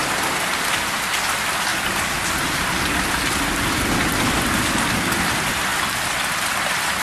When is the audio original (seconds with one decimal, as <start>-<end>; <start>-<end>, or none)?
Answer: 0.0-7.0